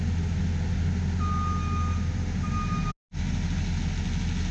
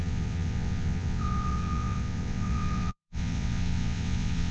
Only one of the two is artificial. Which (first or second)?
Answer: second